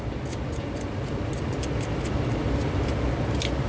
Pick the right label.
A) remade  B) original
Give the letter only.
B